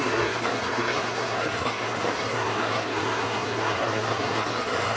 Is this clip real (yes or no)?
no